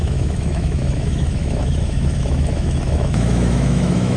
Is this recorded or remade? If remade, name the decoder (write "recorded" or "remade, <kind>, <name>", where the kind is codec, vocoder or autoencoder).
remade, autoencoder, DAC-VAE